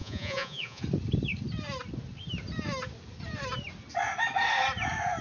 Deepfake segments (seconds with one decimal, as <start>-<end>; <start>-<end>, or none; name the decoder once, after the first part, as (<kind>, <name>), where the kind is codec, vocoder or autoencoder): 0.0-0.8 (vocoder, Vocos)

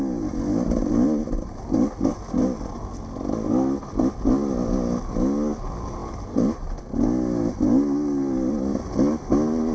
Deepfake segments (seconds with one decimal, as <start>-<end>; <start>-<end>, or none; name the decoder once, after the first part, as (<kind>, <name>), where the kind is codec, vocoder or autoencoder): none